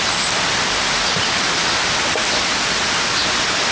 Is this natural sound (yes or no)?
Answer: yes